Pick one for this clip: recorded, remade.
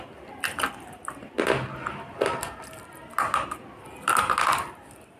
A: recorded